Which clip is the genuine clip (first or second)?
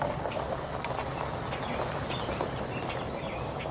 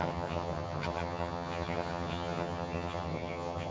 first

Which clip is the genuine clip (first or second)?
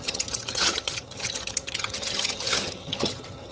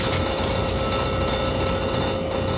second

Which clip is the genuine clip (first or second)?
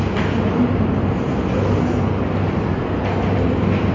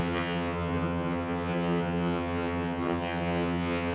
first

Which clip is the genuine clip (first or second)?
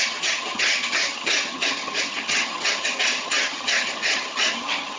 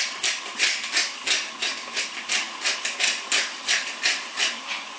second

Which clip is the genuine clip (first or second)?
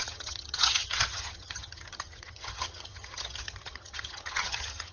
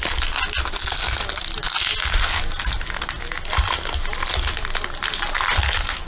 second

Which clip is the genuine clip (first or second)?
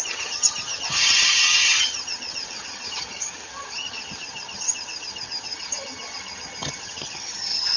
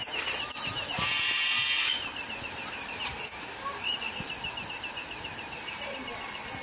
second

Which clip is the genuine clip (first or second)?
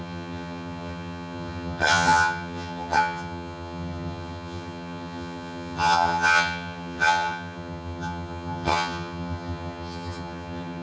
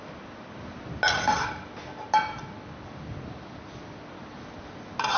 second